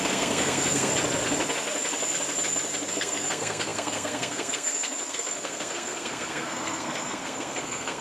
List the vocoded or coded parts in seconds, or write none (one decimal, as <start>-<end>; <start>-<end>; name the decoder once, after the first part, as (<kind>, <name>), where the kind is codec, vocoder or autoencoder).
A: 0.0-0.9 (codec, SNAC); 2.9-8.0